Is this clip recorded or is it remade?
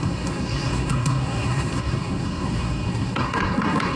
remade